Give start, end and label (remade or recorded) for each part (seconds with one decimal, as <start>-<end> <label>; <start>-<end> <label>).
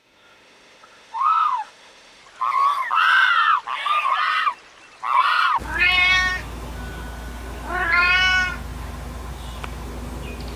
0.0-2.2 remade; 2.2-10.6 recorded